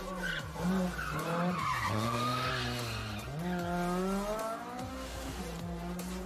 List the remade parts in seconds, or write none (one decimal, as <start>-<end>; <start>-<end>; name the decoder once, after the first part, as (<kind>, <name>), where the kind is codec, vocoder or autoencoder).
1.9-2.5 (autoencoder, DAC-VAE); 4.9-5.4